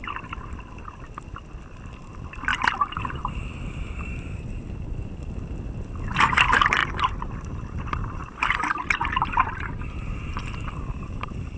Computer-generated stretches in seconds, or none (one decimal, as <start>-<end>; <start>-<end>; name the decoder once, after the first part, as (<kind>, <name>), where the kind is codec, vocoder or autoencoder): 0.0-2.5 (vocoder, BigVGAN v2); 3.2-6.8; 7.5-8.2; 9.5-11.6